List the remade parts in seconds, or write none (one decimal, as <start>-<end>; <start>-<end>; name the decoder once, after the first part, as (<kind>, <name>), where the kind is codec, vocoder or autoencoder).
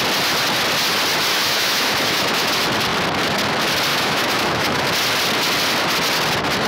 1.3-2.5 (autoencoder, DAC-VAE); 3.9-4.8